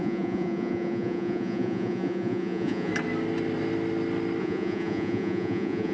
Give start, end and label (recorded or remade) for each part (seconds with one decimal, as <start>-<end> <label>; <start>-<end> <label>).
0.0-2.9 remade; 2.9-4.4 recorded; 4.4-5.9 remade